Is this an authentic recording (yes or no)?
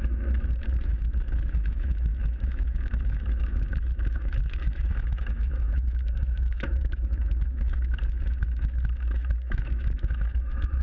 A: no